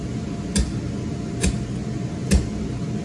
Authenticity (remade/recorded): recorded